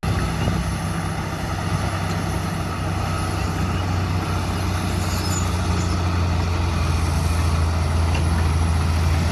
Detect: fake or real real